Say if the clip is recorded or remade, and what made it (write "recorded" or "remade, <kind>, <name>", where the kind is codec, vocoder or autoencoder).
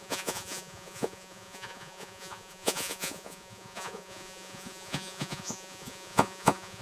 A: remade, vocoder, Vocos